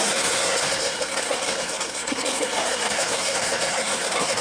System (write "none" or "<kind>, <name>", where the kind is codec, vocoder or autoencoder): codec, SNAC